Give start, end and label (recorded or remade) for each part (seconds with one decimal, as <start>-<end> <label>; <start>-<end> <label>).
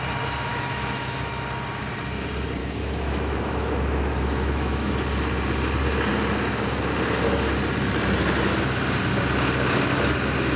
0.0-0.5 recorded; 0.5-1.3 remade; 1.3-2.6 recorded; 2.6-4.9 remade; 4.9-10.6 recorded